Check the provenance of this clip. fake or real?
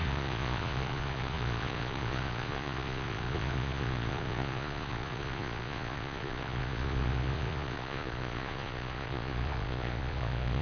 fake